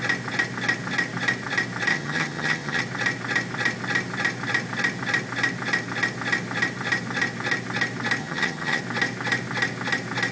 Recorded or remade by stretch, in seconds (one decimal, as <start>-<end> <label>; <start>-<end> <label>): 0.0-1.9 recorded; 1.9-2.8 remade; 2.8-8.2 recorded; 8.2-8.8 remade; 8.8-10.3 recorded